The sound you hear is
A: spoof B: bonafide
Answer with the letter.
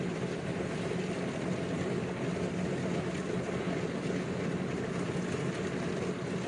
B